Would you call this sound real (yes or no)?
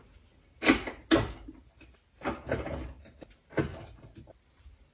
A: yes